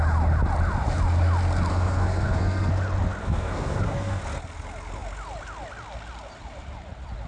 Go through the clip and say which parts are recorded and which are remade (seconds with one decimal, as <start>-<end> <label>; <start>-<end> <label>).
0.0-1.7 recorded; 1.7-2.7 remade; 2.7-3.2 recorded; 3.2-4.2 remade; 4.2-7.3 recorded